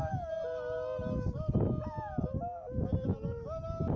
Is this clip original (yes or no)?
yes